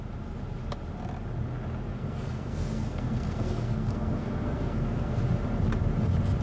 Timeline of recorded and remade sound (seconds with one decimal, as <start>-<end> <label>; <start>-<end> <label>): 0.0-1.9 recorded; 1.9-5.2 remade; 5.2-6.4 recorded